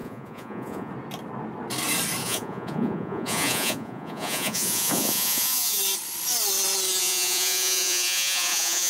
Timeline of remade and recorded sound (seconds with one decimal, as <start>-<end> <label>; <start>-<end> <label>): 0.0-0.9 remade; 0.9-2.2 recorded; 2.2-5.8 remade; 5.8-7.0 recorded; 7.0-8.9 remade